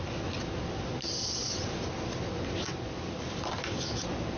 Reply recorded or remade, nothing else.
recorded